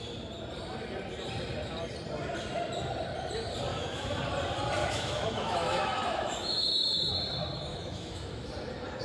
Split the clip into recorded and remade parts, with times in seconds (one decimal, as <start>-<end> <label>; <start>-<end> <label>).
0.0-3.7 recorded; 3.7-4.2 remade; 4.2-4.8 recorded; 4.8-7.1 remade; 7.1-7.7 recorded; 7.7-8.5 remade; 8.5-9.0 recorded